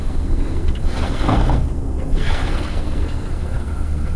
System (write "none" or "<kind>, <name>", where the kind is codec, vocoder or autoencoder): codec, SNAC